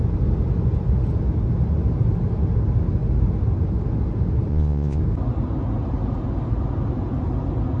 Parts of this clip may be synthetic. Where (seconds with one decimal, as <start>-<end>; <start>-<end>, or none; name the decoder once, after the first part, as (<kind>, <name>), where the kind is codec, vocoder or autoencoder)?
4.5-5.0 (vocoder, Vocos)